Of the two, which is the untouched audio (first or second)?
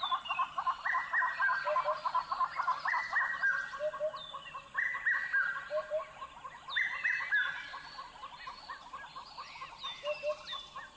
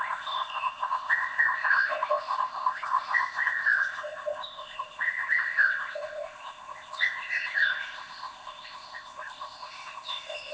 first